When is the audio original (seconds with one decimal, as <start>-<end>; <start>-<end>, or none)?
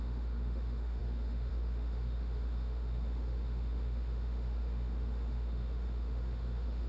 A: none